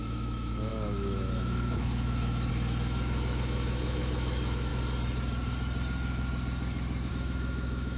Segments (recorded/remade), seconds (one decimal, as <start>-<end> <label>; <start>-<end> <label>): 0.0-4.7 remade; 4.7-7.1 recorded; 7.1-8.0 remade

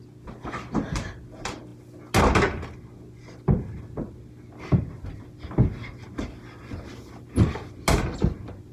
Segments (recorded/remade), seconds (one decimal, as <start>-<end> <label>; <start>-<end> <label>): 0.0-8.7 recorded

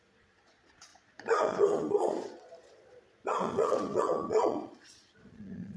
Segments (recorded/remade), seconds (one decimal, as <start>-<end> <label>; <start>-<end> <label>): 0.0-5.8 remade

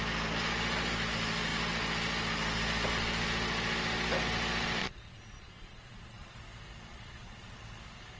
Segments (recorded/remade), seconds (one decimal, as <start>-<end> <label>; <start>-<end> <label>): 0.0-4.8 recorded; 4.8-6.4 remade; 6.4-6.9 recorded; 6.9-7.6 remade; 7.6-8.2 recorded

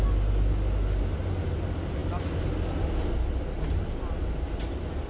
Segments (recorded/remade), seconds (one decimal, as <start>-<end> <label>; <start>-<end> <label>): 0.0-5.1 recorded

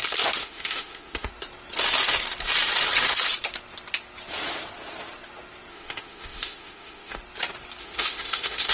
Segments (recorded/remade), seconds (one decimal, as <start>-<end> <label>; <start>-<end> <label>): 0.0-0.4 recorded; 0.4-1.3 remade; 1.3-5.7 recorded; 5.7-7.2 remade; 7.2-7.8 recorded; 7.8-8.7 remade